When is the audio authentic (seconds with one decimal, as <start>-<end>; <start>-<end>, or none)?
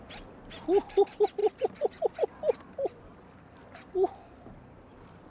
0.0-5.3